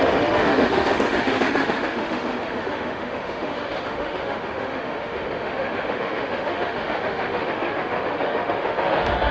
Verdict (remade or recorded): remade